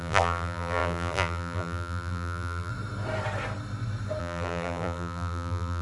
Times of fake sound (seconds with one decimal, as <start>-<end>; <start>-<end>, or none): 0.0-2.7; 4.2-5.8

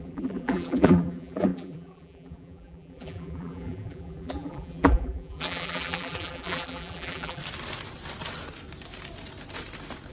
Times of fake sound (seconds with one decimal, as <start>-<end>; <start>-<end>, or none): 0.0-7.4

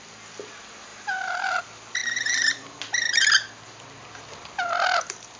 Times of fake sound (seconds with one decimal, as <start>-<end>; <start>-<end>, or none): 0.9-1.6; 2.0-2.8

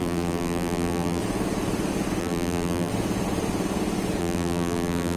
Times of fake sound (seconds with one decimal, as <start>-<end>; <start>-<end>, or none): 0.0-1.2; 2.2-2.9; 4.2-5.2

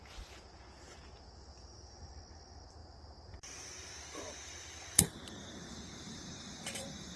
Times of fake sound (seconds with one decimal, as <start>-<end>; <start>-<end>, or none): 1.5-2.1; 2.8-7.2

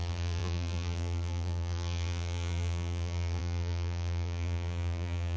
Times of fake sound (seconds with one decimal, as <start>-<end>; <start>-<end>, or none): 0.0-5.4

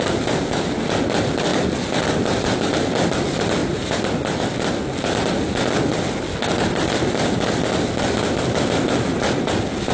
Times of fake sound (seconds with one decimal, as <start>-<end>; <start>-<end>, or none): 3.6-4.4

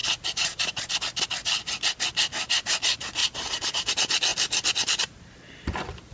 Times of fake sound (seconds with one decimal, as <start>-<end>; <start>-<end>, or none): 0.0-0.9; 3.2-3.9